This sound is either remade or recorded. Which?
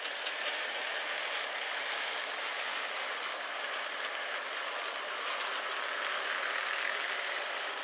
recorded